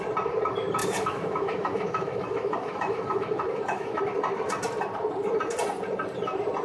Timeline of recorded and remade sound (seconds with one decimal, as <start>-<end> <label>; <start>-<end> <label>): 0.0-0.8 recorded; 0.8-4.0 remade; 4.0-6.6 recorded